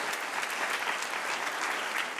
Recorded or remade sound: recorded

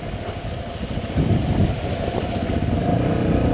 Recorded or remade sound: recorded